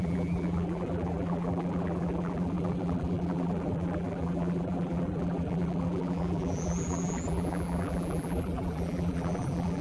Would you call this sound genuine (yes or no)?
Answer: no